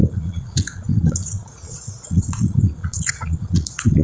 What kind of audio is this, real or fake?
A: fake